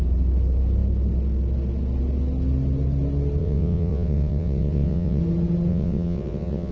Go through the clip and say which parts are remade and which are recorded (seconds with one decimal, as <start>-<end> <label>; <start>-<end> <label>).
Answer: 0.0-3.4 recorded; 3.4-5.2 remade; 5.2-5.7 recorded; 5.7-6.7 remade